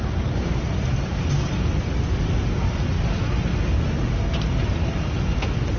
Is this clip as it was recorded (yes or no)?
yes